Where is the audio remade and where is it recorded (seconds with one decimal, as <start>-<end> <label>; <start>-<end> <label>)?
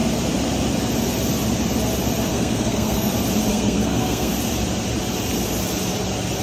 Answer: 0.0-2.3 recorded; 2.3-3.1 remade; 3.1-3.5 recorded; 3.5-4.3 remade; 4.3-6.4 recorded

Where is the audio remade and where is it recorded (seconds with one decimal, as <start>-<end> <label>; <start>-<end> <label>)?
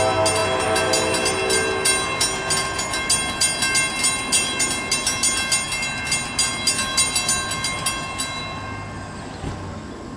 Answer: 0.0-10.2 recorded